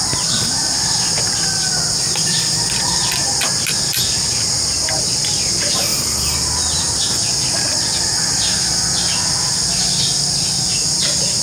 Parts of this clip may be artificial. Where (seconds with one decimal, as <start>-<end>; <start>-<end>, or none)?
none